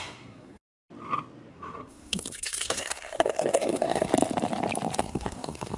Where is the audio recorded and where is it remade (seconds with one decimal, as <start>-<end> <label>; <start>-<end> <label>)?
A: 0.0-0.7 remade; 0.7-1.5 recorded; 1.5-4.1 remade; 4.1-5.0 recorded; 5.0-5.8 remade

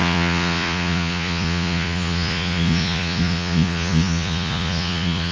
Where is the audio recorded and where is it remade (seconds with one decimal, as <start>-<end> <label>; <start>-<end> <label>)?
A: 0.0-5.3 remade

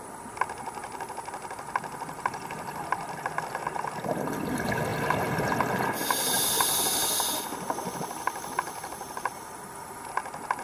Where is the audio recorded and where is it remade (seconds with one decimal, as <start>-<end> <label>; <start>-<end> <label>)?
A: 0.0-10.6 recorded

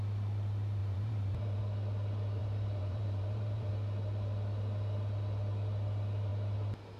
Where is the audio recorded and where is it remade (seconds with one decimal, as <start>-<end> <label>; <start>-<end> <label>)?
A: 0.0-0.8 recorded; 0.8-1.6 remade; 1.6-2.4 recorded; 2.4-3.7 remade; 3.7-7.0 recorded